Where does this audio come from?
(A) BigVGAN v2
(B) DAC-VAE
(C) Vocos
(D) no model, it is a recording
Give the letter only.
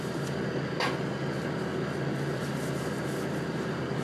D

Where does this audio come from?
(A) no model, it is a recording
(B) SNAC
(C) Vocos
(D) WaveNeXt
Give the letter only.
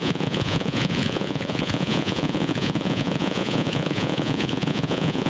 C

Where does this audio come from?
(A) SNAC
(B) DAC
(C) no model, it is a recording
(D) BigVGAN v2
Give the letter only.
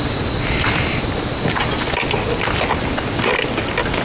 C